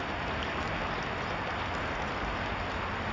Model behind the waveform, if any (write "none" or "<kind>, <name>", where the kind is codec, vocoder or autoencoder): none